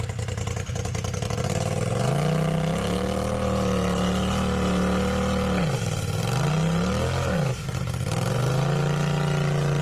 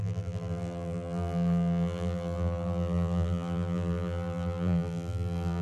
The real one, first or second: first